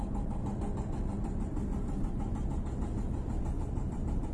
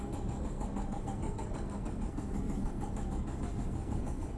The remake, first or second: second